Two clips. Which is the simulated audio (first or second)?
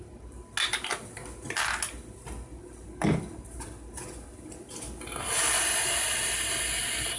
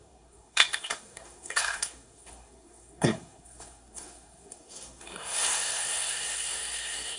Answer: second